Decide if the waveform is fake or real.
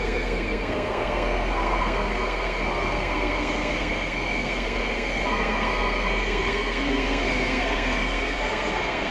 fake